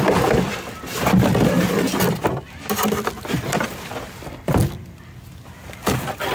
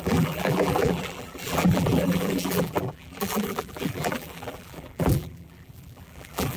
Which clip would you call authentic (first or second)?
first